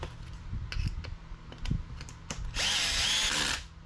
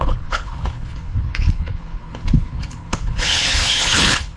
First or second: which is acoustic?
first